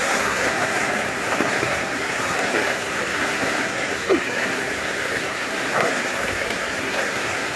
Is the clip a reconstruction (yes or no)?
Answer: yes